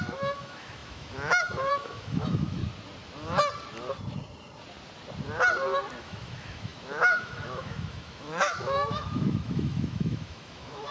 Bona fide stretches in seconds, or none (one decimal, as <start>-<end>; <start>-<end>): 2.6-6.0